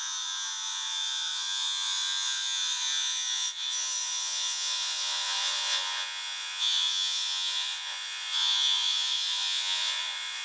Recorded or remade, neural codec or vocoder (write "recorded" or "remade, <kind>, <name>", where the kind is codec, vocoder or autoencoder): remade, vocoder, Vocos